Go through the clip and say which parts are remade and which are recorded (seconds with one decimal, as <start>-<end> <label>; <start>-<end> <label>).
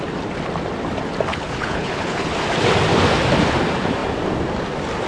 0.0-1.3 recorded; 1.3-2.3 remade; 2.3-5.1 recorded